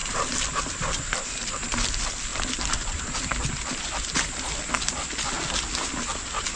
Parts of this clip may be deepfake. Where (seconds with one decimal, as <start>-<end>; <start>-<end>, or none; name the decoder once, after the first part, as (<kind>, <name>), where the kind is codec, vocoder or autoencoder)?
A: none